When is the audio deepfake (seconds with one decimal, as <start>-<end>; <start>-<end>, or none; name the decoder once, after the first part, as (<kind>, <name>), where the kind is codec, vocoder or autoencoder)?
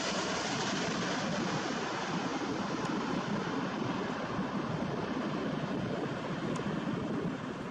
none